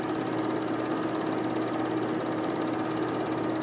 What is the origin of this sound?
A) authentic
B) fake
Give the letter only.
A